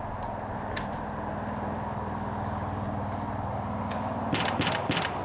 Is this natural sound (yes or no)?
yes